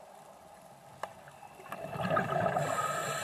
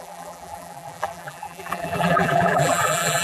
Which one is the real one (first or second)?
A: first